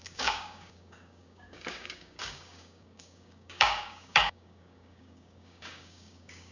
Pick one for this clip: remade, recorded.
remade